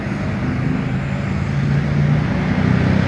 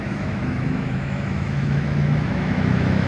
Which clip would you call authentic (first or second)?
first